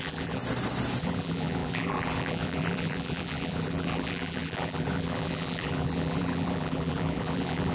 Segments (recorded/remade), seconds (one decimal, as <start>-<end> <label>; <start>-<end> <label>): 0.0-0.4 remade; 0.4-1.0 recorded; 1.0-7.7 remade